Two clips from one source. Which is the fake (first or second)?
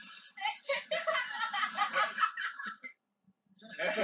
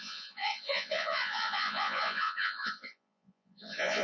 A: second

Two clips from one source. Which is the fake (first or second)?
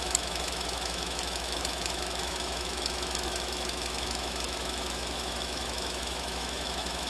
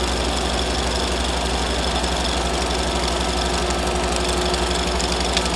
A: first